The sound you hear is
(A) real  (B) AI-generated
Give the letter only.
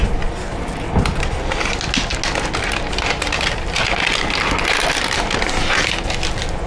A